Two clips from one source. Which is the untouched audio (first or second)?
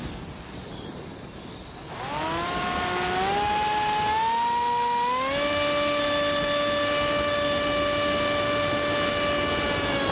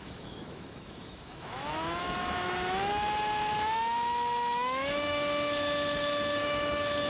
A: first